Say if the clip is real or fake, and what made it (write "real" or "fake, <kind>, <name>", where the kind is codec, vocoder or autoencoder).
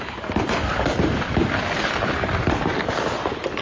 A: fake, vocoder, BigVGAN v2